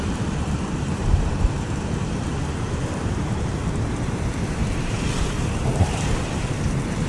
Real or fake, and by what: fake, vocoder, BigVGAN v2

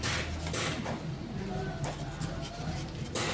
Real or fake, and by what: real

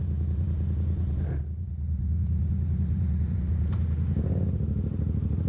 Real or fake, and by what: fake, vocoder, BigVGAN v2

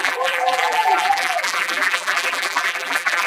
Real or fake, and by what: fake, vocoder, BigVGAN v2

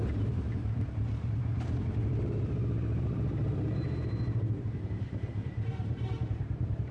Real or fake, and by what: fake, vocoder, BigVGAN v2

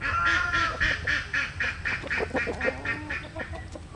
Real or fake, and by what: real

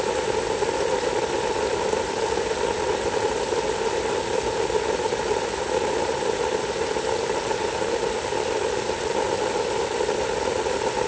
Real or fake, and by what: fake, vocoder, BigVGAN v2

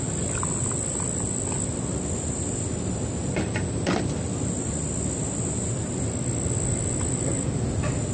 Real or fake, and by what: real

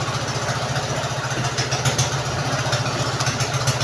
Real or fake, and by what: real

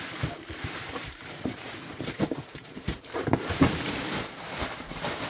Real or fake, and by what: fake, vocoder, BigVGAN v2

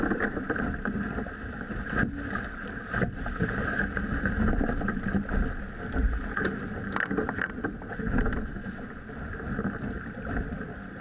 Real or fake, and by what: real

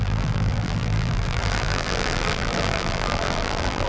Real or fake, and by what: fake, vocoder, BigVGAN v2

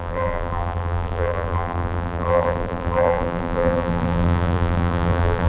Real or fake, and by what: fake, vocoder, BigVGAN v2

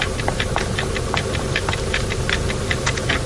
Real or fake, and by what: real